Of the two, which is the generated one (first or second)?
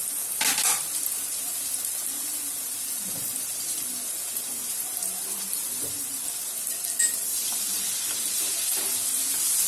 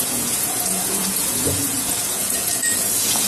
second